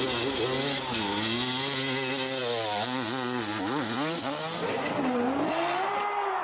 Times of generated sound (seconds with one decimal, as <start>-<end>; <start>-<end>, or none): none